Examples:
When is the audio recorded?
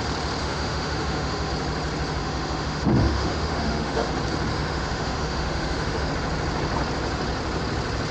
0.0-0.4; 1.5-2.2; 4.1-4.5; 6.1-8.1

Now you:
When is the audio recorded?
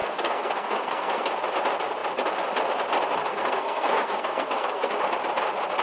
1.2-3.3; 4.9-5.8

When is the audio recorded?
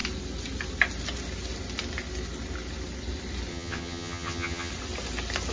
0.0-3.5; 4.7-5.5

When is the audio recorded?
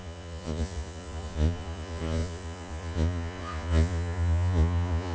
none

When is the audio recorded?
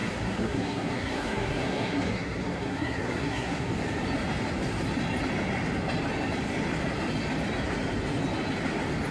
3.7-9.1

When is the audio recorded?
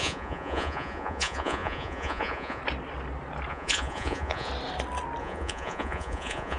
2.6-3.5; 4.5-5.2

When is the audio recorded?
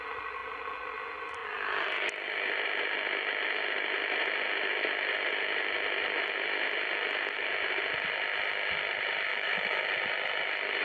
0.0-9.3; 9.9-10.8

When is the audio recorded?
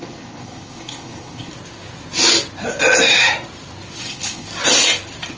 1.5-4.0; 4.5-5.4